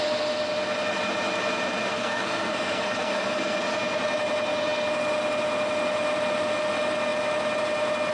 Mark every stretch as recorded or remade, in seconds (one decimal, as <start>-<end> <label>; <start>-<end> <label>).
0.0-1.9 recorded; 1.9-3.6 remade; 3.6-8.1 recorded